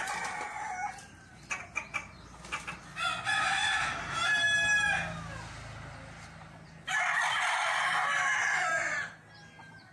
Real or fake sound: real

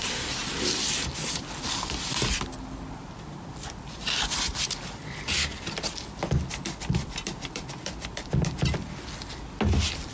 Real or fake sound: real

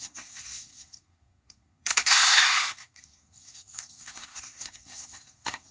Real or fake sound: fake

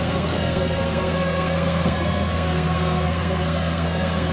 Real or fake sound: fake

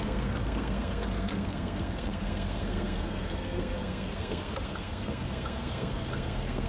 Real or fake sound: fake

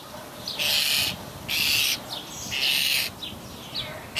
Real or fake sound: real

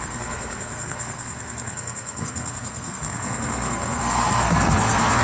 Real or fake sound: fake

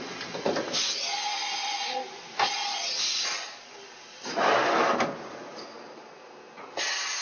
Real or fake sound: real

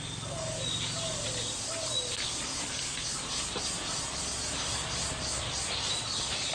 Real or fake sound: real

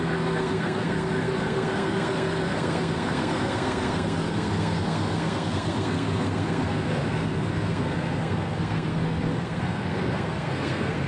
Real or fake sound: fake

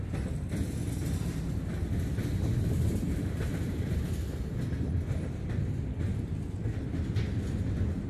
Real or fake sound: real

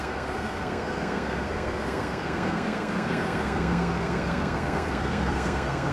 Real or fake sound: fake